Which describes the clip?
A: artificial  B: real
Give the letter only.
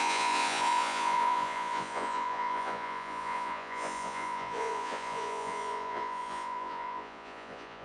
A